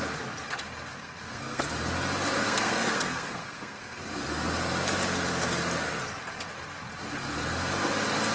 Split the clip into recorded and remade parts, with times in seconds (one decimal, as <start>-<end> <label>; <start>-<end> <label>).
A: 0.0-1.0 recorded; 1.0-1.6 remade; 1.6-2.4 recorded; 2.4-4.0 remade; 4.0-8.3 recorded